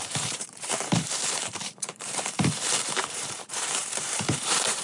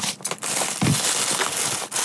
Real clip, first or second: second